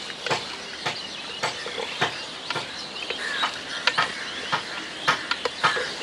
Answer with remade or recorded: remade